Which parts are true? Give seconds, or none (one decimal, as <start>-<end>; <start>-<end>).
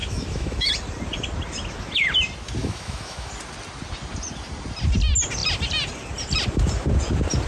0.7-2.6; 3.3-7.5